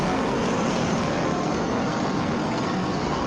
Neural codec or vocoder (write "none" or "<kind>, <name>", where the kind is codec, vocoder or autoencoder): codec, SNAC